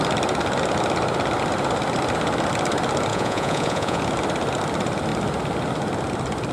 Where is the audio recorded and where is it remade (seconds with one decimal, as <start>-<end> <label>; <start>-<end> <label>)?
0.0-3.1 recorded; 3.1-4.0 remade; 4.0-6.5 recorded